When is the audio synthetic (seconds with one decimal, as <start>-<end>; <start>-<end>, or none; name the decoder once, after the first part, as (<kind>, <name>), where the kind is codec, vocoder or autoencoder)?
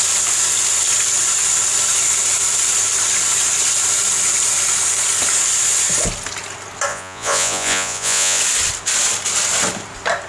6.9-8.4 (vocoder, Vocos)